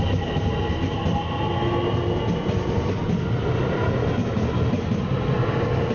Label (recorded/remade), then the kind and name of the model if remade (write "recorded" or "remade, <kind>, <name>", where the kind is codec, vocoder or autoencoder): recorded